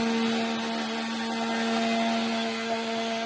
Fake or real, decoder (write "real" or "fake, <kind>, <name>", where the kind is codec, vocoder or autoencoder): real